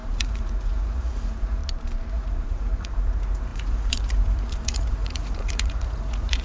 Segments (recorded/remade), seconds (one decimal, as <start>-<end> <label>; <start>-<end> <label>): 0.0-1.6 remade; 1.6-2.1 recorded; 2.1-6.4 remade